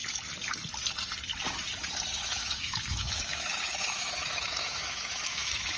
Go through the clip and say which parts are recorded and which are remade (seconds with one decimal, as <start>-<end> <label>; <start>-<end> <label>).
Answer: 0.0-2.1 recorded; 2.1-5.8 remade